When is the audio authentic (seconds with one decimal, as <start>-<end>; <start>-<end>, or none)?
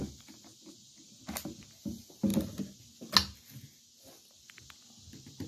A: 0.0-5.5